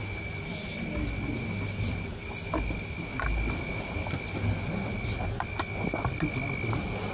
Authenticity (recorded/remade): recorded